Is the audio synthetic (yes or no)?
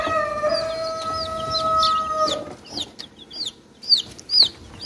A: no